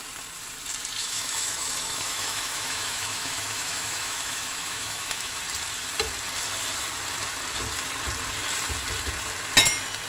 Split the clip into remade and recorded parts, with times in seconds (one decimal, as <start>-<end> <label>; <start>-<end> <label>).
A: 0.0-1.0 recorded; 1.0-5.4 remade; 5.4-10.1 recorded